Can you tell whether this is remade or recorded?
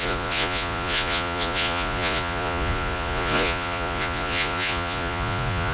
remade